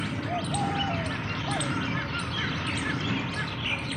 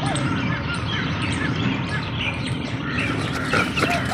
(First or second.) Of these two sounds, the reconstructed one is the second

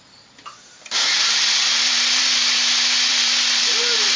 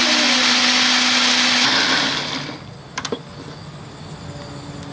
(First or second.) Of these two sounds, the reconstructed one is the first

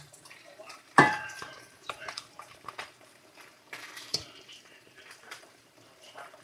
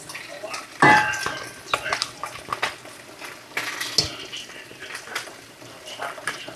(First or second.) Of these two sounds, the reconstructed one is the first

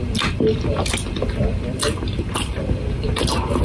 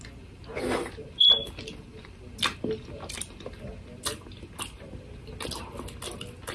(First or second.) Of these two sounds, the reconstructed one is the first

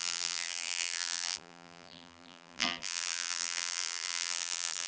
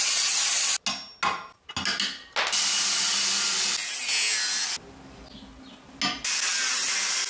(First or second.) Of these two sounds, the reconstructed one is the first